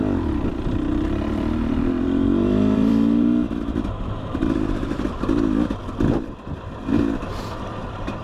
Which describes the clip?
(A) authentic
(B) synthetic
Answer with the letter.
B